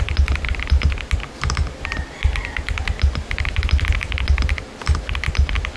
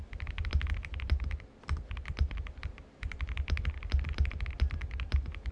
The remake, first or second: first